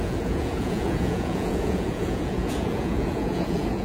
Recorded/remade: remade